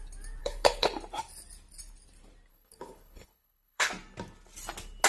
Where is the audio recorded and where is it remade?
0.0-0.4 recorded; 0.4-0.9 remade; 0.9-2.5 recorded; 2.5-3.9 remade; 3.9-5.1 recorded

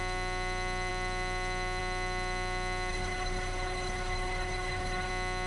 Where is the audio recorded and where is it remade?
0.0-2.9 recorded; 2.9-5.1 remade; 5.1-5.5 recorded

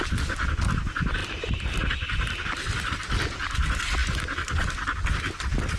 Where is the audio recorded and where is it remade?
0.0-5.8 recorded

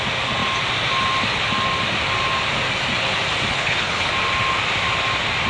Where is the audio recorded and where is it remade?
0.0-3.5 recorded; 3.5-4.1 remade; 4.1-5.5 recorded

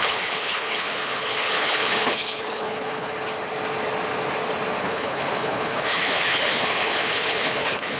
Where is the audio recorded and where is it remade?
0.0-3.1 remade; 3.1-4.8 recorded; 4.8-8.0 remade